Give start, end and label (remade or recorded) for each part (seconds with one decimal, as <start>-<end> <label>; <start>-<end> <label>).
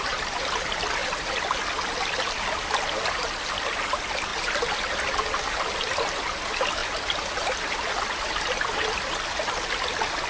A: 0.0-4.3 recorded; 4.3-5.6 remade; 5.6-6.8 recorded; 6.8-9.3 remade; 9.3-10.3 recorded